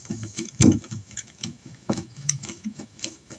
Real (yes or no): no